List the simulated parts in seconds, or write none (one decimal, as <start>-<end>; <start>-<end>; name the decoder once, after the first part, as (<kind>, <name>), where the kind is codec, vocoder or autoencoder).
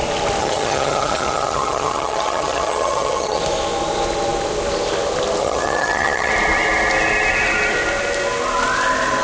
0.4-3.4 (vocoder, HiFi-GAN); 5.4-6.3